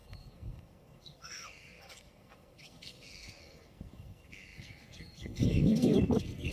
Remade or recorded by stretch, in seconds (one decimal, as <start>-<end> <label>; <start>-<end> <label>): 0.0-6.5 remade